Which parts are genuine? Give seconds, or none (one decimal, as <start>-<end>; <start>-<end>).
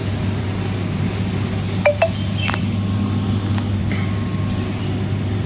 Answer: 0.0-5.5